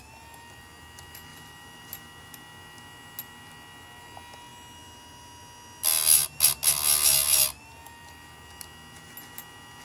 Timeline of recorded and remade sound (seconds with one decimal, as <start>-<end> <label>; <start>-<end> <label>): 0.0-1.3 recorded; 1.3-1.8 remade; 1.8-9.8 recorded